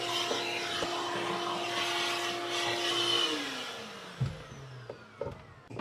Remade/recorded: recorded